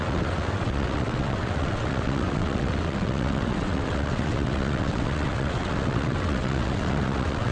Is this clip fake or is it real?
fake